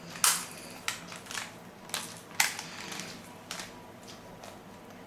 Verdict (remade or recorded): recorded